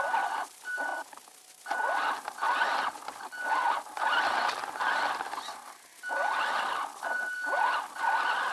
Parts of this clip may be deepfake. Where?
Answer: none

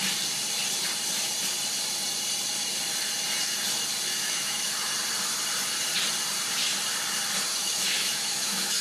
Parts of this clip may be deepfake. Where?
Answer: 4.2-4.9 (autoencoder, DAC-VAE); 7.5-8.8

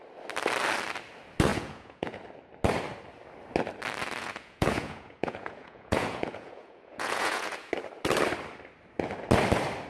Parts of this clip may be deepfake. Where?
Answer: 1.5-2.2 (vocoder, Vocos); 4.2-7.7